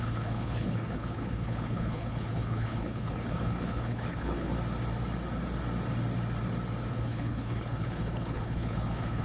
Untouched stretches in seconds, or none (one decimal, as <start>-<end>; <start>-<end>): 4.5-6.9